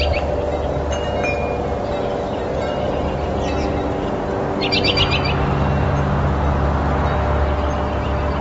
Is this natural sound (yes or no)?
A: yes